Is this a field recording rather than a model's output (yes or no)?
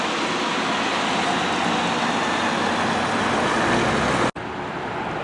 yes